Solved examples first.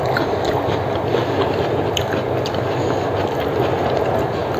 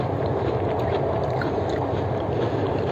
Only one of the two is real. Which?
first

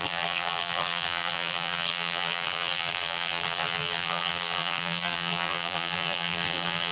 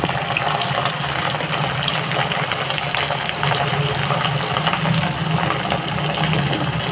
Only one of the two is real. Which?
second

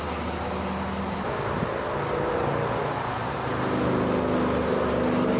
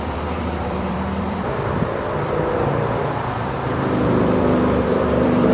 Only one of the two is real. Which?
first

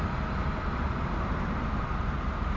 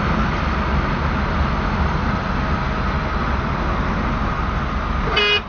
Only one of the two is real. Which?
second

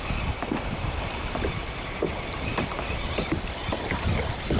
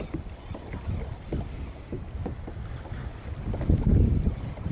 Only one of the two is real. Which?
second